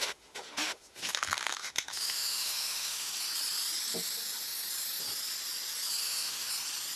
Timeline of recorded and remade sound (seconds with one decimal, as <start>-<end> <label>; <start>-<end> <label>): 0.0-3.1 remade; 3.1-6.0 recorded; 6.0-6.5 remade; 6.5-7.0 recorded